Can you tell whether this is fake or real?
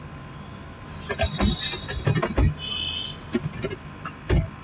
real